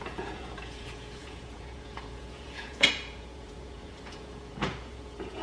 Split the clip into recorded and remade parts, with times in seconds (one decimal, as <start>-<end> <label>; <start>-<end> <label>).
0.0-5.4 remade